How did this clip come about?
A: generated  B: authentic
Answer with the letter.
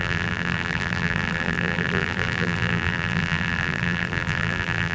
A